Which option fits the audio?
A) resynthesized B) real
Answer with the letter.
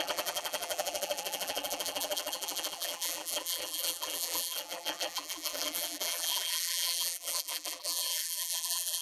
A